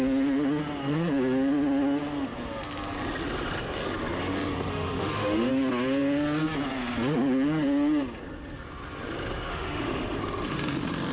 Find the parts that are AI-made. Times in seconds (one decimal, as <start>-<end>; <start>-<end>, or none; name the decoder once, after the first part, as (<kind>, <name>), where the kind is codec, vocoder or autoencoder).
4.7-5.5 (autoencoder, DAC-VAE); 9.5-10.2